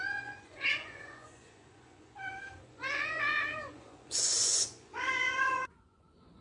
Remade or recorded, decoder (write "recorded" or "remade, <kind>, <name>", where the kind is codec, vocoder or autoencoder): remade, vocoder, Vocos